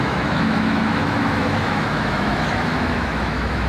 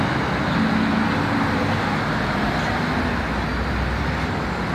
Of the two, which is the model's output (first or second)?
first